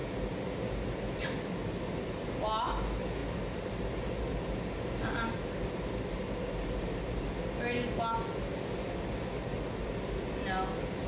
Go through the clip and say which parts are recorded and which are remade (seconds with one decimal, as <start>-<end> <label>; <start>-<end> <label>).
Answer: 0.0-1.6 recorded; 1.6-2.3 remade; 2.3-11.1 recorded